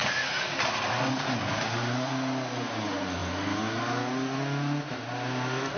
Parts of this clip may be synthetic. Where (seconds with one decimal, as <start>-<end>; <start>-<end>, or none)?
none